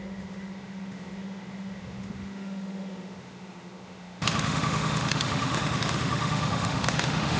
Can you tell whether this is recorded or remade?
remade